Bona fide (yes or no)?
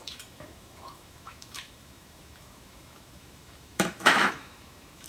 no